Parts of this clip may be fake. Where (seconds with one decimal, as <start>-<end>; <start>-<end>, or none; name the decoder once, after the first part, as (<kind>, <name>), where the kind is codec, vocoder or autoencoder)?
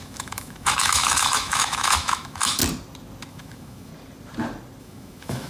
0.0-2.6 (autoencoder, DAC-VAE); 3.3-3.9; 4.8-5.5